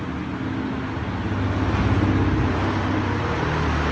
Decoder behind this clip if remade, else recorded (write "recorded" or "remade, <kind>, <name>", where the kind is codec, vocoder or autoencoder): recorded